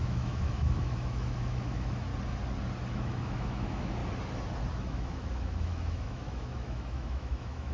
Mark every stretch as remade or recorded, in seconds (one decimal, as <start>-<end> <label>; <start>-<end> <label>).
0.0-2.1 remade; 2.1-2.9 recorded; 2.9-4.0 remade; 4.0-4.8 recorded; 4.8-7.7 remade